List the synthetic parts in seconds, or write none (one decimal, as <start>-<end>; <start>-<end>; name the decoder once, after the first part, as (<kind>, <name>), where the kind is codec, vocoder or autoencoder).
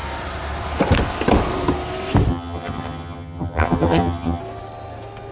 2.3-4.4 (vocoder, HiFi-GAN)